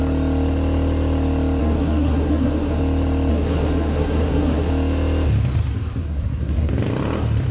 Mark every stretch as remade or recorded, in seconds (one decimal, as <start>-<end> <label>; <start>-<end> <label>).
0.0-1.6 recorded; 1.6-2.8 remade; 2.8-3.3 recorded; 3.3-4.7 remade; 4.7-6.0 recorded; 6.0-6.7 remade; 6.7-7.5 recorded